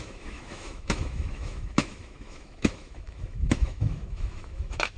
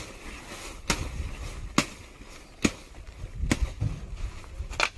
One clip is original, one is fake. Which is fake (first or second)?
first